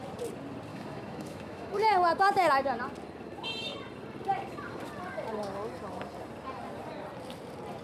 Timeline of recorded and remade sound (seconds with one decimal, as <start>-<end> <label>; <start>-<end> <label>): 0.0-0.7 recorded; 0.7-2.8 remade; 2.8-7.8 recorded